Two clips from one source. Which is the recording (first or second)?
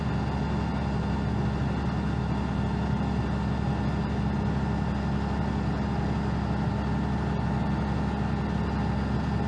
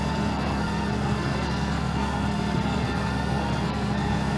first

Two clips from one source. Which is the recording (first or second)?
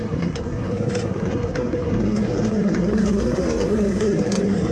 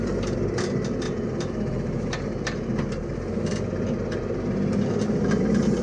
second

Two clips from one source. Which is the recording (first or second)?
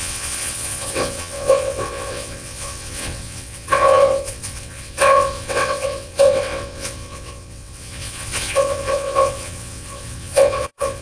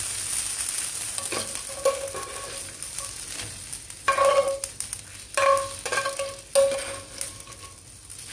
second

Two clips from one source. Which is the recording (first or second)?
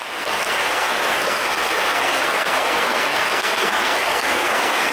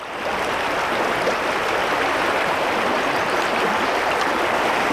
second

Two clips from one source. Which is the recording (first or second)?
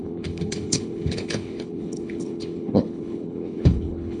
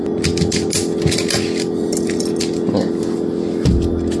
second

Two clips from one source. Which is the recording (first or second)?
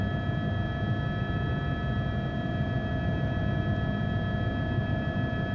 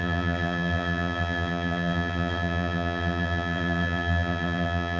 first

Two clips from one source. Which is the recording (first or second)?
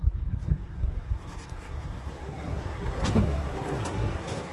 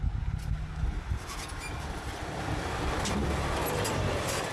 second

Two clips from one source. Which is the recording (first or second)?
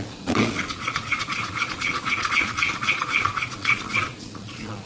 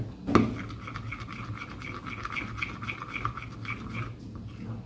second